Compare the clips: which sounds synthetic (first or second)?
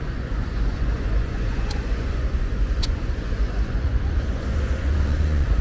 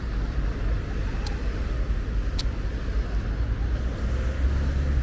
first